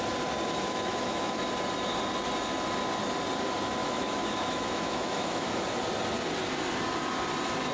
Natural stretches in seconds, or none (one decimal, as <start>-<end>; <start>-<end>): 0.0-0.5; 1.4-3.8; 5.8-7.7